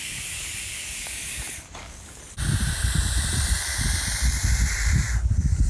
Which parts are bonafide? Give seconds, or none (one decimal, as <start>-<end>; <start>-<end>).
2.2-5.7